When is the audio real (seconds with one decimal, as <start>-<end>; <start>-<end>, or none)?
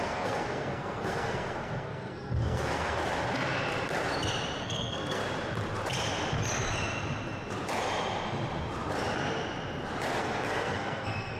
3.0-4.6; 5.2-10.2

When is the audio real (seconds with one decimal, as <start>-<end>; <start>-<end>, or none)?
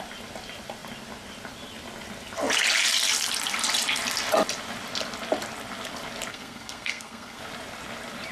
0.0-6.3; 7.4-8.3